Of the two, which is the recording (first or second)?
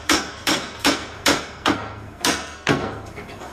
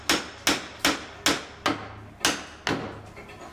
second